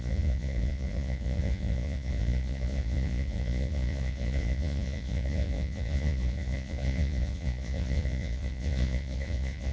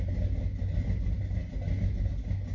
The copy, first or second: first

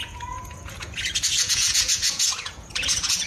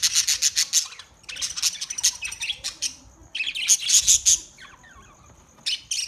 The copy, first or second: first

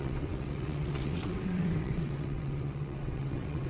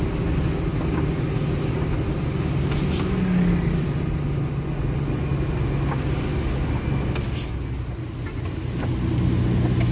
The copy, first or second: first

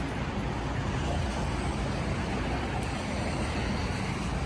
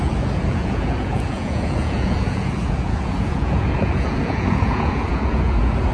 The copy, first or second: second